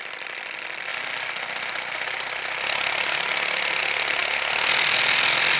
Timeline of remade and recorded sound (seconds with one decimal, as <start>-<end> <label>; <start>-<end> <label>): 0.0-5.6 recorded